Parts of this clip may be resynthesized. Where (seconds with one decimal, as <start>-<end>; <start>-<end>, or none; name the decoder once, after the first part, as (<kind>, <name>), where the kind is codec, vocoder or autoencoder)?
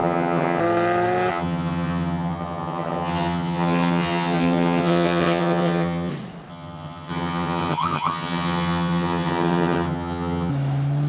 0.0-0.6 (vocoder, HiFi-GAN); 1.3-6.1; 6.5-10.5